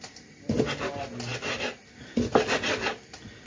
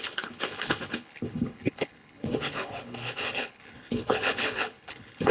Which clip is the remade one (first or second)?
second